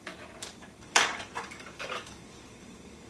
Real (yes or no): no